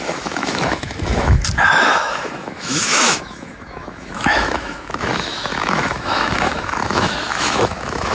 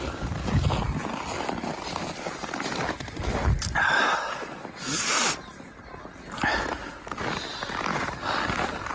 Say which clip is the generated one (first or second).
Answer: first